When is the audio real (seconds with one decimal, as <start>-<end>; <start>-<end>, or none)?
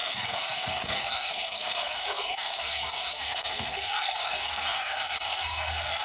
none